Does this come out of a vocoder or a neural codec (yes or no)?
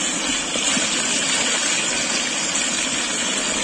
no